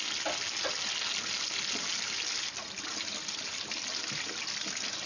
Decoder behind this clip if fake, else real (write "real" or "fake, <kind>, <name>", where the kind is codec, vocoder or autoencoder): real